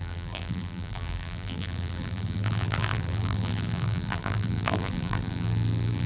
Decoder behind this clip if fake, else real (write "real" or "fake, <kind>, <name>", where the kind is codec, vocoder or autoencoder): fake, vocoder, BigVGAN v2